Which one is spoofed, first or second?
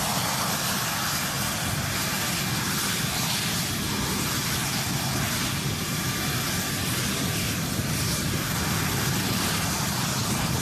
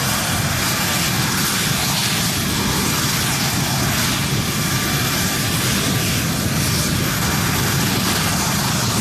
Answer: first